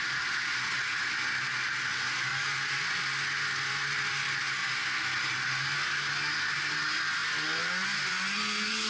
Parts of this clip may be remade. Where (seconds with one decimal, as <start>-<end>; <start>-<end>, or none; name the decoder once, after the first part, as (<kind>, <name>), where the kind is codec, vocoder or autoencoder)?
none